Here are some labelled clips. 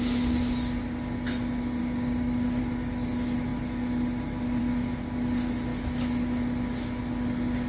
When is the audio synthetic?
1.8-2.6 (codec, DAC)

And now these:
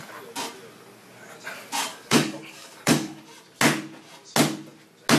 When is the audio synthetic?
1.9-3.2 (codec, DAC)

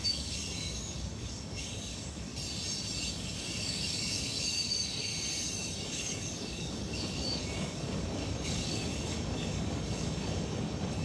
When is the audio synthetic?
0.0-2.3 (codec, DAC); 3.1-5.1; 5.8-11.0

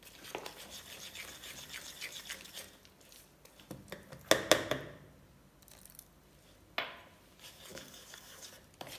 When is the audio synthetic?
7.7-8.5 (codec, DAC)

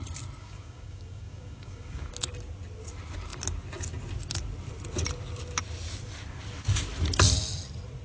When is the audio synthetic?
0.4-2.1 (codec, DAC)

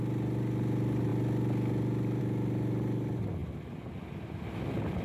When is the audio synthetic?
none

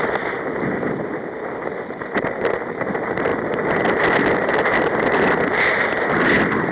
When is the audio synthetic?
none

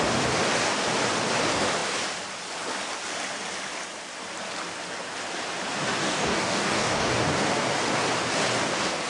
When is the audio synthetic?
6.0-7.1 (codec, DAC)